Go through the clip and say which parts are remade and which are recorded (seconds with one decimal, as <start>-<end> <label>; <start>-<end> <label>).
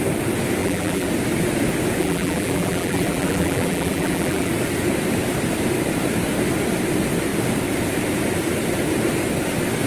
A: 0.0-0.6 recorded; 0.6-1.1 remade; 1.1-2.0 recorded; 2.0-4.5 remade; 4.5-9.9 recorded